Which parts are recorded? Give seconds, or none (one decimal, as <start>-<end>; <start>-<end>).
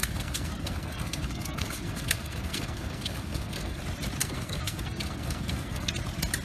3.8-4.2; 5.9-6.4